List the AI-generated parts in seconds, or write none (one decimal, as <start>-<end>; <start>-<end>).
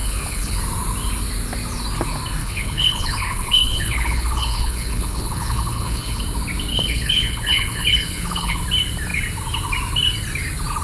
0.0-0.6; 2.4-6.2; 6.7-8.6